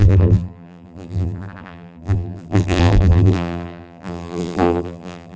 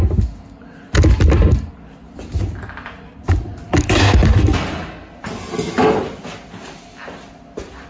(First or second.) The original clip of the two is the second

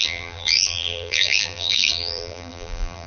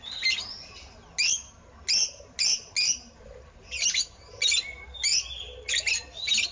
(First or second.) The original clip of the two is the second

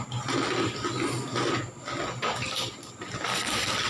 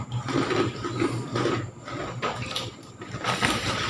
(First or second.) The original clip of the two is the first